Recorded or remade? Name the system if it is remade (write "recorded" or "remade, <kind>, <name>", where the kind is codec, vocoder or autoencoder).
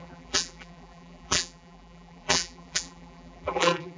remade, vocoder, BigVGAN v2